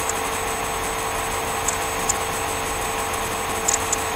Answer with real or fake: real